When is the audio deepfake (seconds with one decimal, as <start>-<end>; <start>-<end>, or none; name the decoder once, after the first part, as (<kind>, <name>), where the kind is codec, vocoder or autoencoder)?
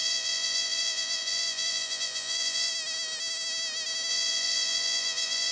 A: 0.0-2.7 (vocoder, Vocos); 4.1-5.5